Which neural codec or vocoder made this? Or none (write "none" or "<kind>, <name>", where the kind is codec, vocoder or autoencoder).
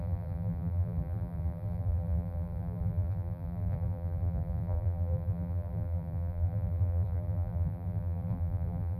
vocoder, BigVGAN v2